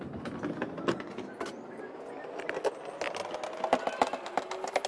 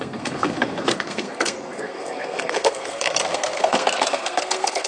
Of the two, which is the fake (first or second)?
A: second